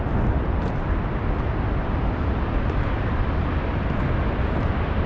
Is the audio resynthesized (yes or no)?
no